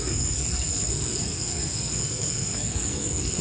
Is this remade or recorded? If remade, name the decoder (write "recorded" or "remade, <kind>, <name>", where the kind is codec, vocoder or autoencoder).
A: remade, codec, SNAC